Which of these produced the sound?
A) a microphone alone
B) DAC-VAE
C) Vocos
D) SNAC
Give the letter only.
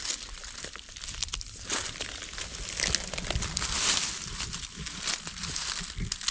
A